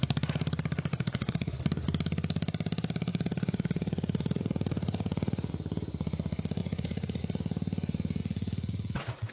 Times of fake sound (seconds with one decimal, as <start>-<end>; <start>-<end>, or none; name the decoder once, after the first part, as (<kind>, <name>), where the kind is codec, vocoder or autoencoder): 0.9-1.5 (vocoder, Vocos); 3.1-5.5; 6.6-7.2; 8.2-9.3